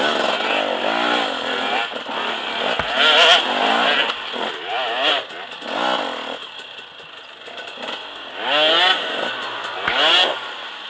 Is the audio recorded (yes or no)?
yes